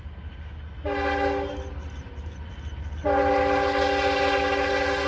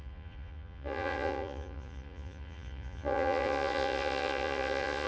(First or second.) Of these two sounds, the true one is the first